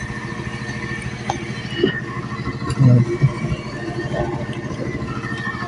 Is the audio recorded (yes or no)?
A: yes